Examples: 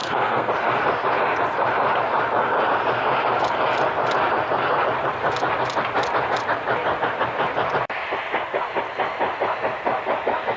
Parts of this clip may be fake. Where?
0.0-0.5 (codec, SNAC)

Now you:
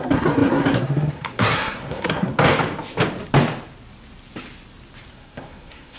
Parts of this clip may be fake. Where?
0.0-2.3 (codec, SNAC); 5.1-6.0

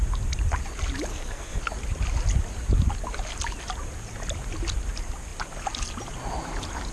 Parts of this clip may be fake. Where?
1.1-1.6 (codec, SNAC)

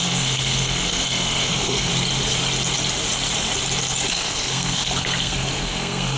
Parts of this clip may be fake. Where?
0.0-1.9 (codec, SNAC); 4.1-6.2

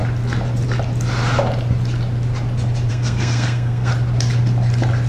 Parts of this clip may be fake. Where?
2.9-3.9 (codec, SNAC)

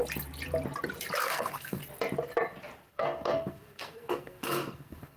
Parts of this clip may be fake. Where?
1.2-1.8 (codec, SNAC); 2.9-5.2

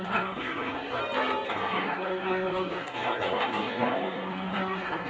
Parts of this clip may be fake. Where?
0.0-1.0 (codec, SNAC); 1.5-5.1